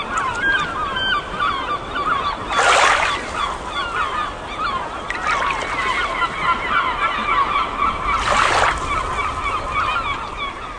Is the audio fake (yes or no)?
no